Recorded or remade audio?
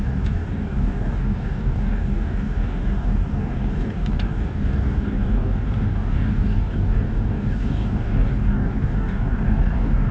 remade